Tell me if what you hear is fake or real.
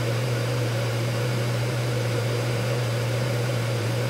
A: fake